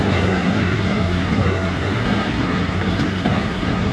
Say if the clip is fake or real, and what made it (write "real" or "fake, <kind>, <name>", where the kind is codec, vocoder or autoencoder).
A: fake, codec, SNAC